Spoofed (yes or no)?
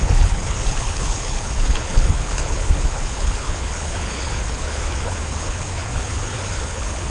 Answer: yes